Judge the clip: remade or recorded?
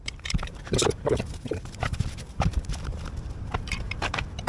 remade